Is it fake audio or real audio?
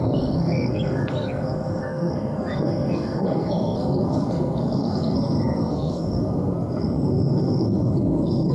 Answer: fake